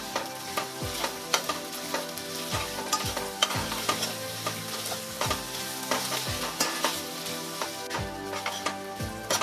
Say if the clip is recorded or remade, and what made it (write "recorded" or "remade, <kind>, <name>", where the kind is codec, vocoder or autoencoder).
recorded